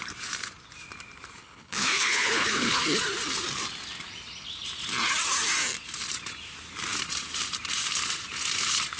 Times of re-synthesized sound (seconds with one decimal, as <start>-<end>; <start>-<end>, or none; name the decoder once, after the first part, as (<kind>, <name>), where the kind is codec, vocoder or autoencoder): 1.4-2.8 (codec, HILCodec)